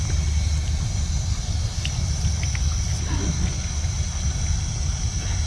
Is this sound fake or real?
real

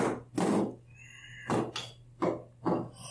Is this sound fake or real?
real